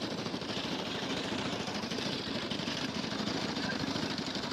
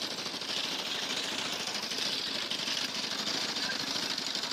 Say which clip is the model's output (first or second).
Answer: first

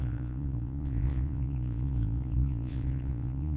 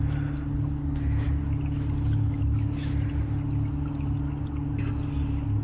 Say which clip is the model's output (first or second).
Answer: first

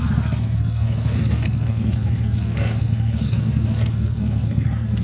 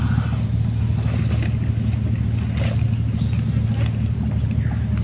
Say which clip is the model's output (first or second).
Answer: first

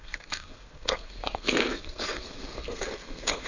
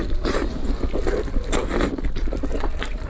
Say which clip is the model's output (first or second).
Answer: first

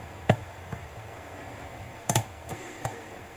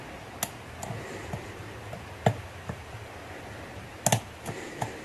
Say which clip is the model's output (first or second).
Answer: first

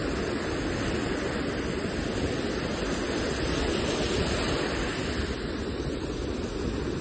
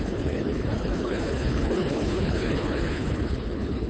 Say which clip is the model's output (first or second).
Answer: second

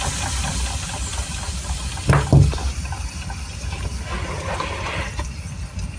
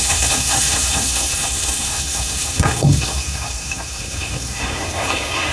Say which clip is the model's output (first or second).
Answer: second